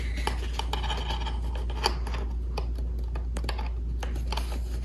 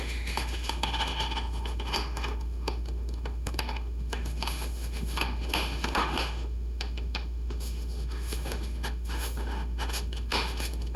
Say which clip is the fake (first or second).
second